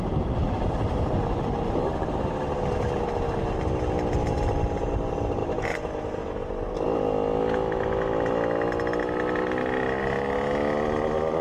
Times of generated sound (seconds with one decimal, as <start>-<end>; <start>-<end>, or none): 0.4-2.2